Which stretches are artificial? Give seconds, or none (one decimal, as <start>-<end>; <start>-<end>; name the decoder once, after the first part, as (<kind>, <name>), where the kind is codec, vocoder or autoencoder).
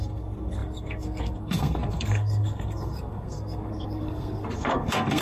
0.0-5.2 (codec, SNAC)